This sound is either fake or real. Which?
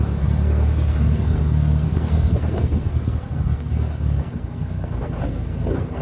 fake